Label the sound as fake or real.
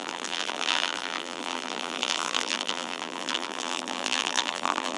fake